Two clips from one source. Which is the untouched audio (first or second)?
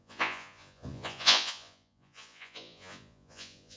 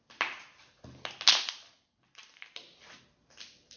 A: second